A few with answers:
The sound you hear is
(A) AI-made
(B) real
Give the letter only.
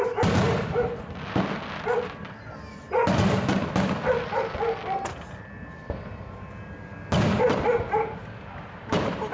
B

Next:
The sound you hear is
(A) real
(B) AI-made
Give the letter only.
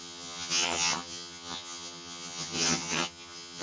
B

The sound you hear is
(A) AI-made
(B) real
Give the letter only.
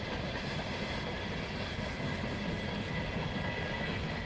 B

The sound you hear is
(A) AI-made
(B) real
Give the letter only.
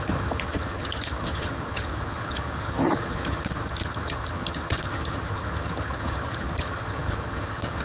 A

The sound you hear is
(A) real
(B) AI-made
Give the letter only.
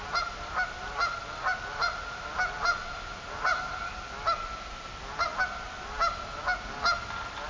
A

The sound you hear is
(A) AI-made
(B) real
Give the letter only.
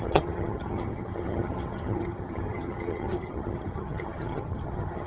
A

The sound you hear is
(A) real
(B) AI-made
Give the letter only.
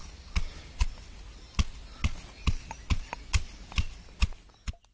A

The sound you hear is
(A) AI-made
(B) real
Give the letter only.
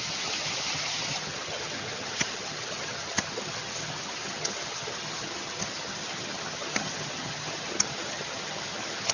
A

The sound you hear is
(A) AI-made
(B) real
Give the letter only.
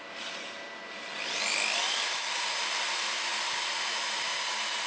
B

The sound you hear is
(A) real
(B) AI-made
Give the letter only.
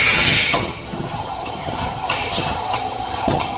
B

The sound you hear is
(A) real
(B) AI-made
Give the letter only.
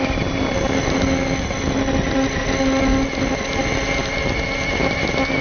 A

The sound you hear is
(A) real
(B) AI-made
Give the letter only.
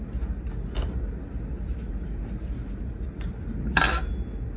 A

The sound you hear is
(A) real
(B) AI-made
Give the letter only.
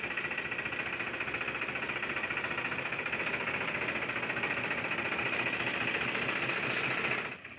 A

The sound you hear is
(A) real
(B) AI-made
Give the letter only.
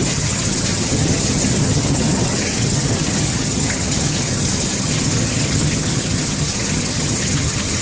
B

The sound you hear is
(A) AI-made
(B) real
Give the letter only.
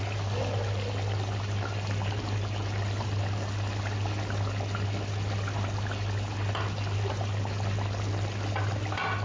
B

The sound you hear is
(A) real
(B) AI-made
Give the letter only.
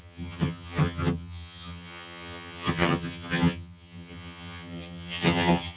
B